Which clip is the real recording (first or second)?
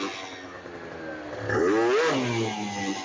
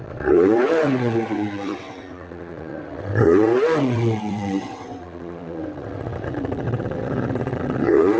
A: first